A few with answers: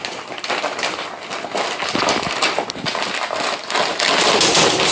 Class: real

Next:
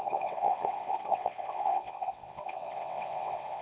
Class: fake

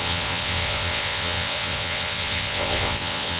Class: fake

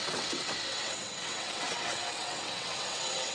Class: fake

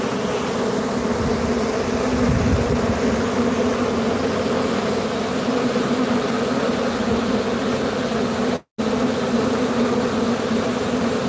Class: real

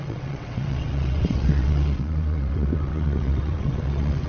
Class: fake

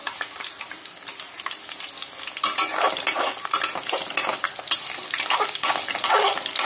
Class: real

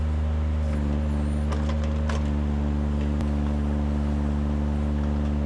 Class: real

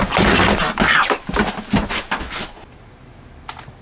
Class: real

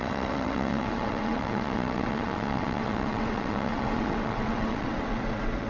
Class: fake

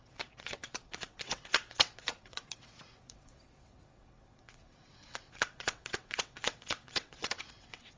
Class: fake